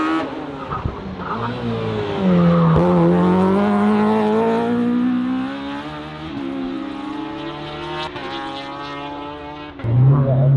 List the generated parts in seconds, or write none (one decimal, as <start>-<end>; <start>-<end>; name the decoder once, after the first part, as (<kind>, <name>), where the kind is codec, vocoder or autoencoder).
none